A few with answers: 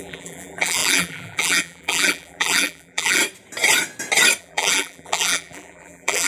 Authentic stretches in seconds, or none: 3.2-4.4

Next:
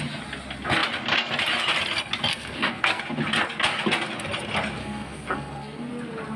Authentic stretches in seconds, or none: 0.0-2.3; 3.0-4.8; 5.9-6.4

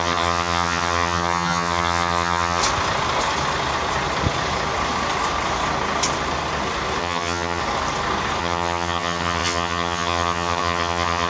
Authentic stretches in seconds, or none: 2.6-7.0; 7.6-8.4

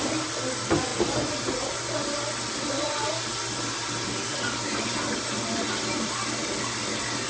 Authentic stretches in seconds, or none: 0.0-7.3

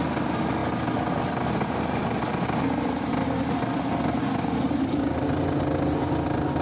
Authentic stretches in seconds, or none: 0.0-6.6